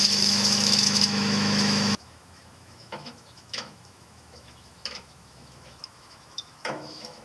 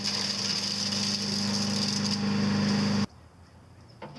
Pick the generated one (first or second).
first